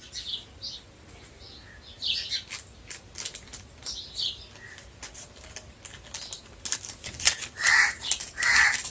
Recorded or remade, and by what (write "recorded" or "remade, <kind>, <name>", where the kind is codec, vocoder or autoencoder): recorded